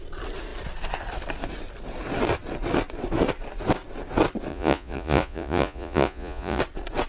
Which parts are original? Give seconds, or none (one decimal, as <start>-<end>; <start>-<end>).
0.0-4.5; 6.6-7.1

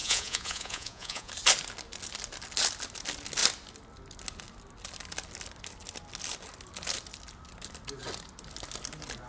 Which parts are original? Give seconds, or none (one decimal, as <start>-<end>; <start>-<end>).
1.3-9.3

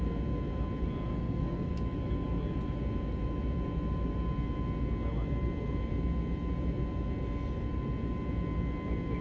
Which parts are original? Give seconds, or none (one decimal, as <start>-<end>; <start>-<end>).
0.0-1.1; 1.7-9.2

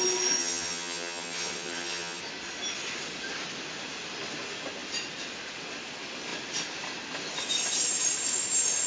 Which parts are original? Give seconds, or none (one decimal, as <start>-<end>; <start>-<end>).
0.0-0.4; 2.2-8.9

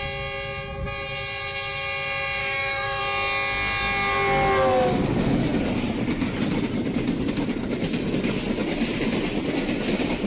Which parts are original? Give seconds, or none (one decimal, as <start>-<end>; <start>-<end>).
0.0-2.4; 3.0-10.3

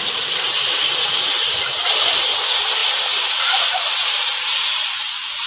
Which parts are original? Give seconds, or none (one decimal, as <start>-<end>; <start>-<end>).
2.8-3.6

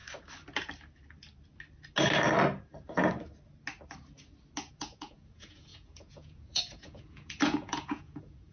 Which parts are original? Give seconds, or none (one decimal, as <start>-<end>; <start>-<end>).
0.0-4.7